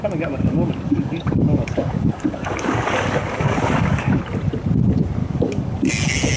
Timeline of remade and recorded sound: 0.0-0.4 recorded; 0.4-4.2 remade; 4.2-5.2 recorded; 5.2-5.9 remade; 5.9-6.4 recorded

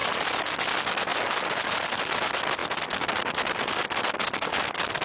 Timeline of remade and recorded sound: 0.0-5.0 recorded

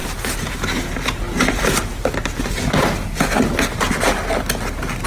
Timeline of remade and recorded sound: 0.0-5.1 recorded

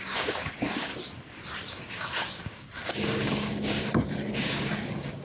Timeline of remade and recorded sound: 0.0-0.9 remade; 0.9-1.7 recorded; 1.7-5.2 remade